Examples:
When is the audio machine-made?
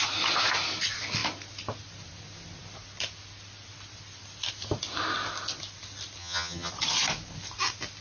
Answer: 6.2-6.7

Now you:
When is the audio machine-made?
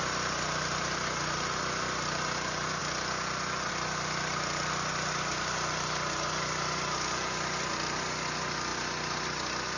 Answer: none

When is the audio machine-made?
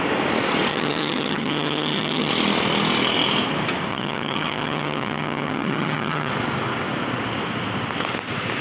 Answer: 0.7-2.3; 3.9-6.3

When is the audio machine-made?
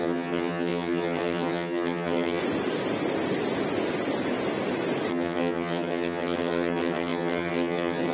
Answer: 0.0-2.4; 5.1-8.1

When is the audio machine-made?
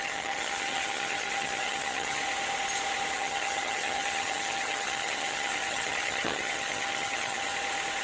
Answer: 0.0-2.2; 3.1-7.5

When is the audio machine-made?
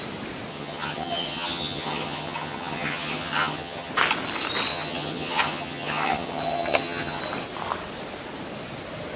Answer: 0.5-3.9; 4.7-7.2